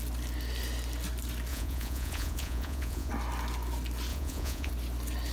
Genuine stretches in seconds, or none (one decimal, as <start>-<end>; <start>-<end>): 0.0-1.5; 3.1-4.1; 4.7-5.3